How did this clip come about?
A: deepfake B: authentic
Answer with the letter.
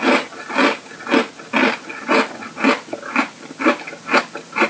B